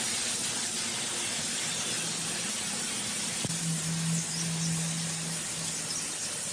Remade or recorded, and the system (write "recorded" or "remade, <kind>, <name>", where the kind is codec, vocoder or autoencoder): recorded